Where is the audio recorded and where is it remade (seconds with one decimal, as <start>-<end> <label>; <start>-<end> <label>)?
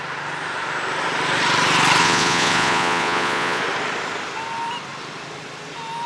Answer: 0.0-2.0 recorded; 2.0-3.6 remade; 3.6-6.1 recorded